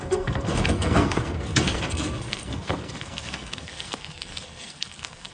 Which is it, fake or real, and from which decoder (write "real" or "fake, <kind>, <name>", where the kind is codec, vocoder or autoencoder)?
fake, codec, SNAC